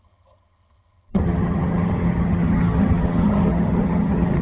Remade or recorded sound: remade